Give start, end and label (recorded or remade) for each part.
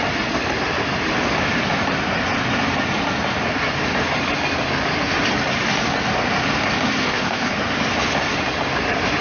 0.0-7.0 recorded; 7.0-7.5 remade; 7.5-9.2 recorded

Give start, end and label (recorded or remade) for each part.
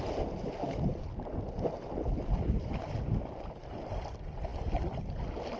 0.0-5.6 recorded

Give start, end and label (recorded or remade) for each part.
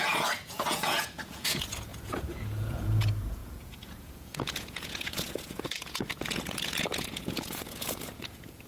0.0-8.7 remade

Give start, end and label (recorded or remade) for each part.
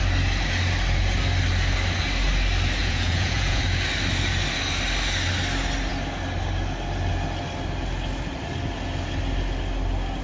0.0-2.8 recorded; 2.8-3.6 remade; 3.6-10.2 recorded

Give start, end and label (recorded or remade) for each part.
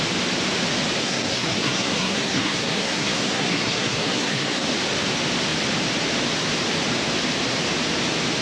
0.0-1.0 recorded; 1.0-4.7 remade; 4.7-8.4 recorded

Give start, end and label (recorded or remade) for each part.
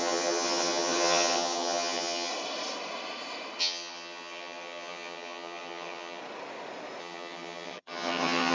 0.0-2.3 remade; 2.3-3.6 recorded; 3.6-6.2 remade; 6.2-7.0 recorded; 7.0-8.5 remade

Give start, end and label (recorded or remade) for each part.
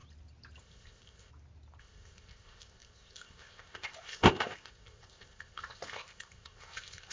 0.0-0.6 recorded; 0.6-1.3 remade; 1.3-1.8 recorded; 1.8-7.1 remade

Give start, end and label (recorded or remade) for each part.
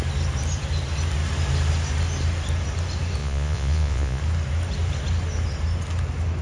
0.0-3.2 recorded; 3.2-4.2 remade; 4.2-6.4 recorded